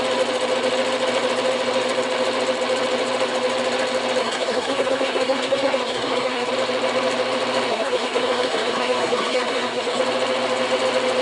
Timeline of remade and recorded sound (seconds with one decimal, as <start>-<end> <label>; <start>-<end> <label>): 0.0-4.2 recorded; 4.2-6.5 remade; 6.5-7.7 recorded; 7.7-10.0 remade; 10.0-11.2 recorded